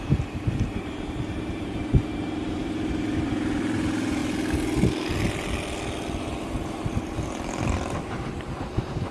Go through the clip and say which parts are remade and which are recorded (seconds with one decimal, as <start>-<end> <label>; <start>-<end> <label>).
0.0-4.2 remade; 4.2-6.2 recorded; 6.2-9.1 remade